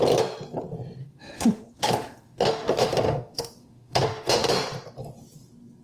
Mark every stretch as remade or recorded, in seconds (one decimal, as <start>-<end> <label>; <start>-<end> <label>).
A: 0.0-1.0 recorded; 1.0-4.5 remade; 4.5-5.8 recorded

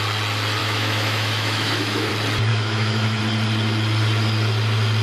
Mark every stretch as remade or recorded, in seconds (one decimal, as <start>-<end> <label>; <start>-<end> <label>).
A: 0.0-0.6 recorded; 0.6-2.1 remade; 2.1-2.5 recorded; 2.5-3.2 remade; 3.2-5.0 recorded

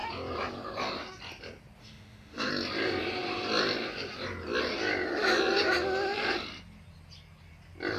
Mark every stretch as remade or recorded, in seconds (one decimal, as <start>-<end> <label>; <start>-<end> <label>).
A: 0.0-1.8 recorded; 1.8-2.5 remade; 2.5-8.0 recorded

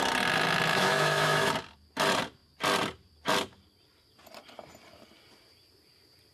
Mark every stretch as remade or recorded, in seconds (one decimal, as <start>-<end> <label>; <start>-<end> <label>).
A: 0.0-0.7 recorded; 0.7-1.5 remade; 1.5-6.3 recorded